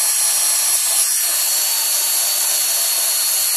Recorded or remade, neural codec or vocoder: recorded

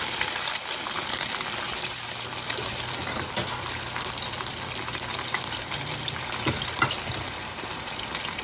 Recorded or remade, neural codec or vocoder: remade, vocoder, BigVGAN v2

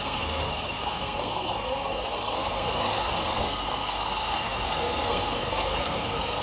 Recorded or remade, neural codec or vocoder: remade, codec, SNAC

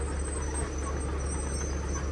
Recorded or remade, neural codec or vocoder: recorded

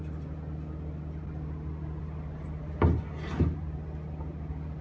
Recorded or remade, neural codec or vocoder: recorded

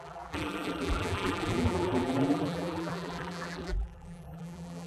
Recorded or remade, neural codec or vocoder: remade, vocoder, BigVGAN v2